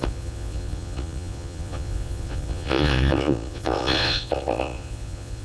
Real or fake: fake